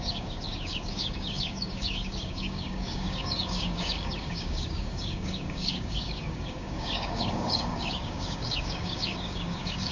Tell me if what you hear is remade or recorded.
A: remade